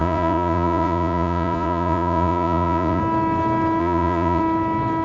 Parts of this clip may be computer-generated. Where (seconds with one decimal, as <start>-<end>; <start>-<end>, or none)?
0.0-3.0; 3.8-4.4

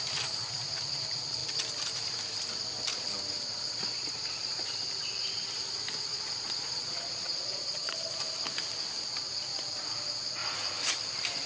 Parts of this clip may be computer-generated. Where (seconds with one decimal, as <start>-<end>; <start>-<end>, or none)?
6.1-7.9

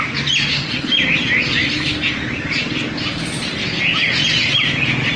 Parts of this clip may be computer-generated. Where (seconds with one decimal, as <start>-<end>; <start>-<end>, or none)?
none

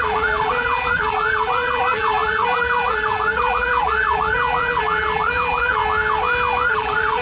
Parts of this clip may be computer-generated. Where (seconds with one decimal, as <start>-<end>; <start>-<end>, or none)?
0.0-5.8; 6.7-7.2

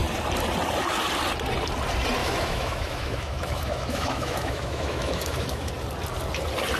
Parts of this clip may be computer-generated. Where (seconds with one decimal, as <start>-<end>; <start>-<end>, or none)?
2.2-5.7